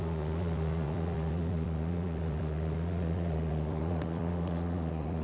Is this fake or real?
fake